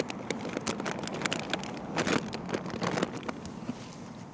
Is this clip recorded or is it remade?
recorded